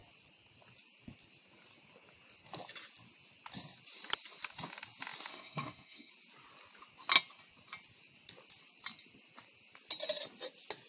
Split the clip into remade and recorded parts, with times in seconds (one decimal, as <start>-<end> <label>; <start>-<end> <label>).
0.0-5.3 recorded; 5.3-6.1 remade; 6.1-10.9 recorded